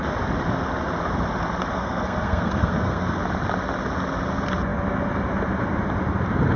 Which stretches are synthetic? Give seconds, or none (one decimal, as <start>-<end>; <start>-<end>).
1.7-3.2